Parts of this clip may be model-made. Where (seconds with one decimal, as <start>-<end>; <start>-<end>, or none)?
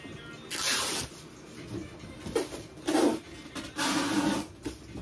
none